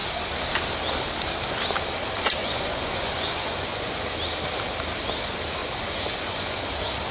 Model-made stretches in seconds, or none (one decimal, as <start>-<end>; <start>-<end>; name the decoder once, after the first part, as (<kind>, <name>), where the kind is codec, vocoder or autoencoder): 2.4-4.0 (vocoder, Vocos); 5.6-6.6